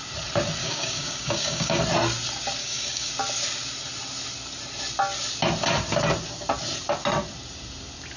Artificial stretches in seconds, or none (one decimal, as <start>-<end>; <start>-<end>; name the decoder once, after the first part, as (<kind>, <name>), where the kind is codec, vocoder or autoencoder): 0.6-1.8 (codec, DAC); 2.6-3.1